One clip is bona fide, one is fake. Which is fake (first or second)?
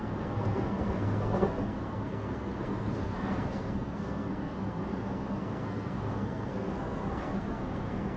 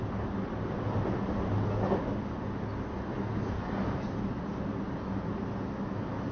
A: first